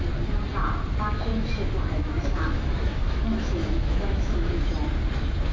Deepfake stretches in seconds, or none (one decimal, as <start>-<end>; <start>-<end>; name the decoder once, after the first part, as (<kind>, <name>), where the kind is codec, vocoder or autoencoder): 1.3-4.6 (autoencoder, DAC-VAE)